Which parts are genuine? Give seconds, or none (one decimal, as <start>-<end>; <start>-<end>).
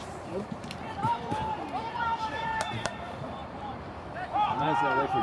none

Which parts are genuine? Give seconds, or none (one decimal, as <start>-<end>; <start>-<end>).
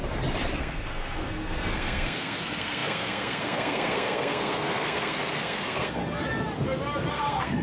0.0-0.6; 6.0-7.1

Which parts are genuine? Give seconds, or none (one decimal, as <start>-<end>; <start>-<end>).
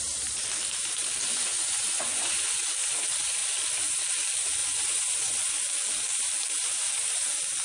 0.0-1.3; 2.5-4.6; 5.5-7.6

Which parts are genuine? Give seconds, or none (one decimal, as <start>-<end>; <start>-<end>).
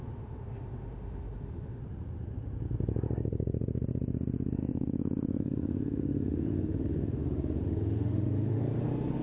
1.8-4.6; 8.6-9.2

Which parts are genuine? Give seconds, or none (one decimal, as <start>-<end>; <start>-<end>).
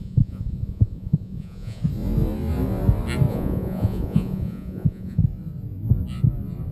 1.8-3.3; 5.2-6.7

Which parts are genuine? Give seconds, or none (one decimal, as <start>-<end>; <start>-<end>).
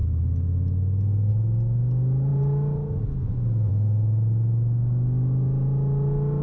0.0-6.4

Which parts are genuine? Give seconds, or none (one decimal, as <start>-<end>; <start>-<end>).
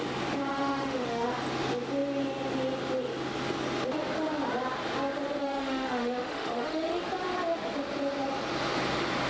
0.0-0.5; 1.3-5.4; 7.0-9.3